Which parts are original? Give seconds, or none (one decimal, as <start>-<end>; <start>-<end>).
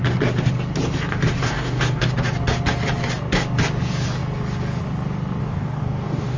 0.0-1.4; 2.1-5.4